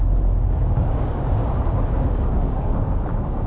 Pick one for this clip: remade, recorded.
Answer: remade